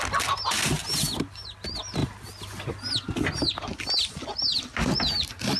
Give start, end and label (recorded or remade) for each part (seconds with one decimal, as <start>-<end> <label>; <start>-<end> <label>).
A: 0.0-5.6 recorded